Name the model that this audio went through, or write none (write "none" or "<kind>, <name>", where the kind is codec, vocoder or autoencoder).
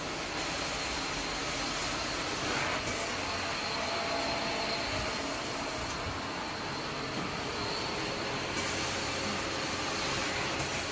none